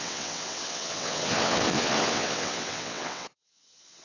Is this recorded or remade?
remade